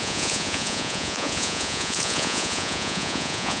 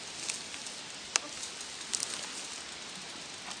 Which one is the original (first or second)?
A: second